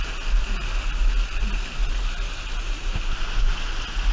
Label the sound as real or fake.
real